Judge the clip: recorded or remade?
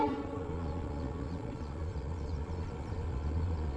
remade